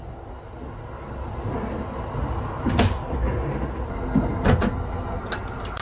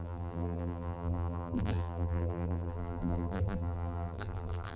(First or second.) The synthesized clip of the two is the second